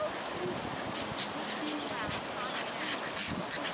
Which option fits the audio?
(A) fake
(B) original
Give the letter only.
B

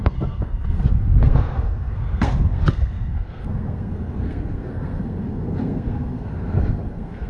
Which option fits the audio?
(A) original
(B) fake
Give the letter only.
B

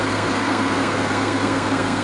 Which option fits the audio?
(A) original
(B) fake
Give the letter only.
B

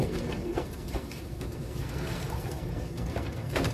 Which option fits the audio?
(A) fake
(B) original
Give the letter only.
A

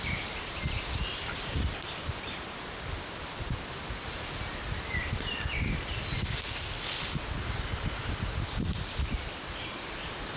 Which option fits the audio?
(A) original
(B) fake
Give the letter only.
A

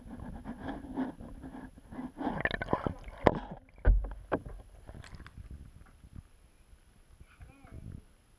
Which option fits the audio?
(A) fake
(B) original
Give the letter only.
B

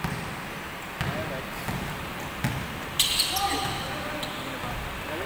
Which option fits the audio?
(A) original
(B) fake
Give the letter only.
A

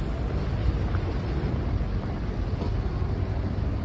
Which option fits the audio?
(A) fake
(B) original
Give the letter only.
B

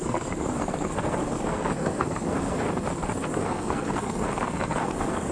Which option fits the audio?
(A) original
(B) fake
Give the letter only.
B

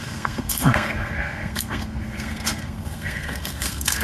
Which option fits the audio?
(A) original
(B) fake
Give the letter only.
B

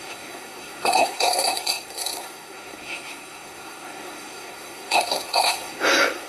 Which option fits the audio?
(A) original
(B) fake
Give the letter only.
B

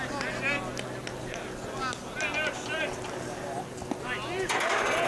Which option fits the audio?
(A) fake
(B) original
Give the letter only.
B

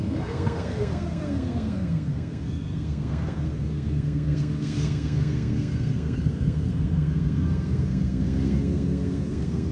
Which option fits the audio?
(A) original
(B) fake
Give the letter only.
B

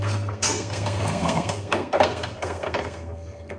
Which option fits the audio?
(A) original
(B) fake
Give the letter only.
B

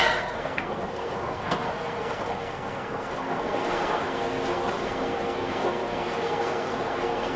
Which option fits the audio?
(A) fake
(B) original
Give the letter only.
A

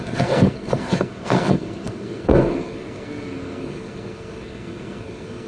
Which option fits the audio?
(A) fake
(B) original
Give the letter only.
A